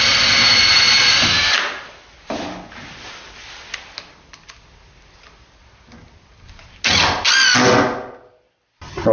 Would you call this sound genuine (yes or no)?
yes